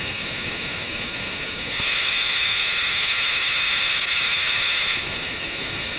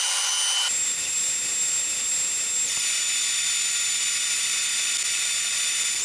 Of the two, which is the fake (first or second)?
first